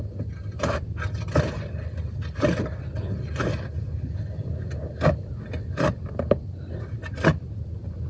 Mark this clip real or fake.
real